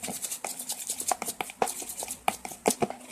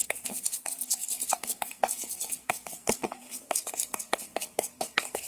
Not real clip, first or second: second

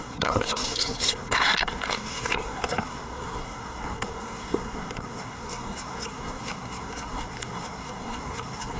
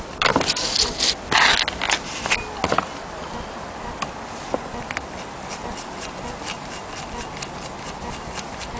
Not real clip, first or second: first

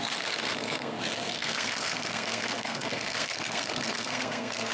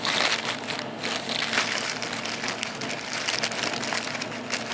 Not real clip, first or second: first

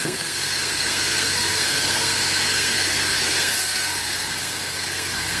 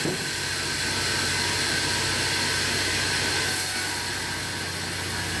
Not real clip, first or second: first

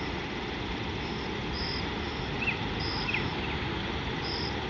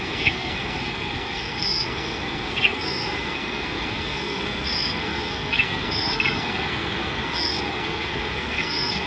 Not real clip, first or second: second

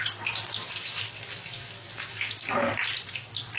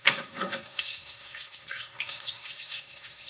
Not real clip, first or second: second